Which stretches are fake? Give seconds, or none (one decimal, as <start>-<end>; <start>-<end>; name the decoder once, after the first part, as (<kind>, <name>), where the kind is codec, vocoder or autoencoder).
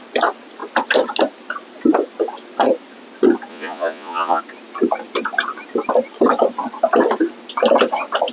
3.5-4.4 (vocoder, Vocos)